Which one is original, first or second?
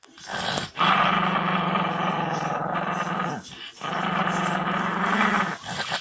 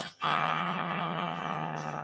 first